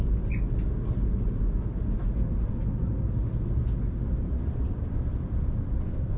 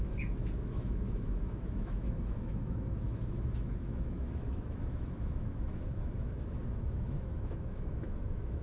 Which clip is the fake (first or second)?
second